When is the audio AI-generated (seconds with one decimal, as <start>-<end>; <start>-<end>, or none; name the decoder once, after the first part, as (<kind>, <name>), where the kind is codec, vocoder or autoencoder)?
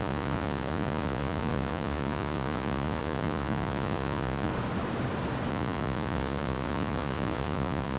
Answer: 0.0-4.5 (vocoder, Vocos); 5.5-8.0